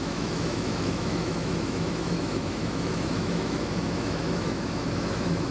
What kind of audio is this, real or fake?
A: fake